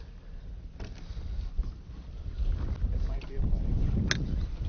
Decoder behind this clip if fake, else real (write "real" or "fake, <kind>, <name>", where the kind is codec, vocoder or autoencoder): real